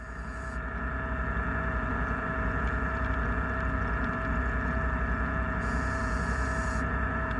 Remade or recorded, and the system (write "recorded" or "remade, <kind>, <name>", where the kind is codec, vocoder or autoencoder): recorded